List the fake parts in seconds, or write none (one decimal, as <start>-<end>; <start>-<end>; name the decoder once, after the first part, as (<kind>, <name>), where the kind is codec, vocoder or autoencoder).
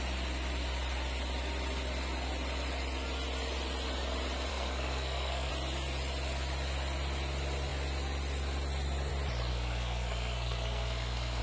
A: 4.5-5.5 (codec, SNAC); 9.5-11.4